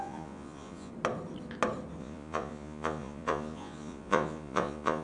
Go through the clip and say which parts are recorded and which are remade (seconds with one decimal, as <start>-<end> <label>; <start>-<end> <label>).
0.0-0.9 remade; 0.9-2.0 recorded; 2.0-5.0 remade